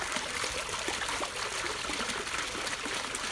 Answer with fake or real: real